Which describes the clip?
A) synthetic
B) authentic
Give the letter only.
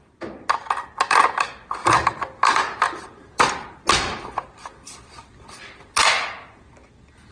B